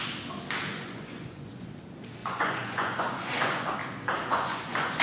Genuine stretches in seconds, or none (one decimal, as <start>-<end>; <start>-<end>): 0.0-0.7; 1.7-2.2; 3.7-4.3